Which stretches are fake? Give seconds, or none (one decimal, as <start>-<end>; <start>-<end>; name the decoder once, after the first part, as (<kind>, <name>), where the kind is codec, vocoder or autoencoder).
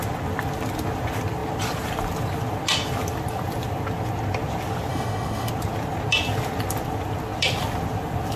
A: 4.9-5.5 (autoencoder, DAC-VAE)